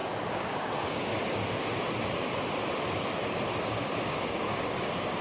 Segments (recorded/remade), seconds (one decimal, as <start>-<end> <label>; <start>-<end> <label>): 0.0-1.1 remade; 1.1-4.2 recorded; 4.2-5.2 remade